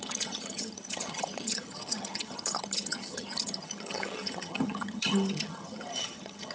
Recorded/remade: remade